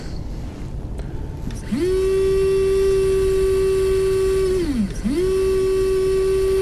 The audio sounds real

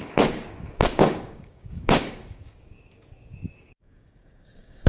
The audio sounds fake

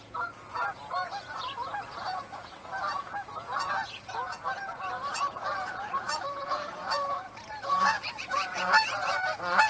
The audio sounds fake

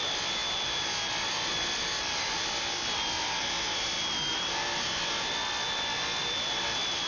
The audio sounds fake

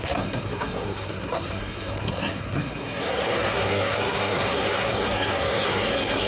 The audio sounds fake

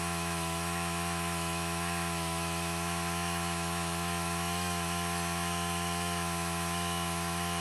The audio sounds fake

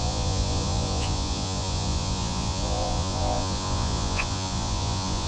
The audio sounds fake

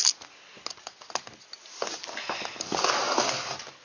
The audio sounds real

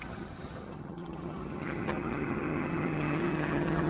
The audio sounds fake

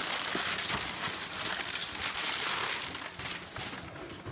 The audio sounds real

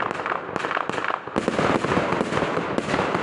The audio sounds real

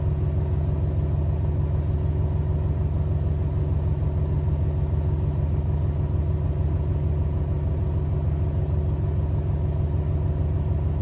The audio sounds real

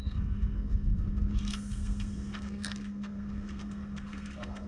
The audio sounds fake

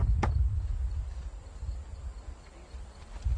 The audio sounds fake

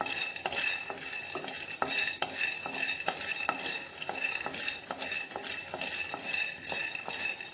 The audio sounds real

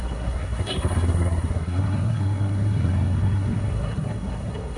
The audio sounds fake